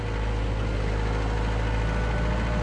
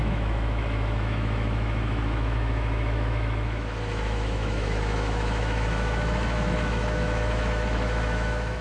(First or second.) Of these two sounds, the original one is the first